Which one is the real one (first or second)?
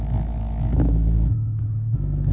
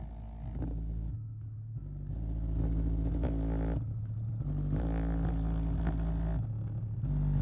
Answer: second